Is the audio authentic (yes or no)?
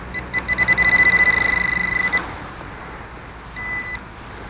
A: yes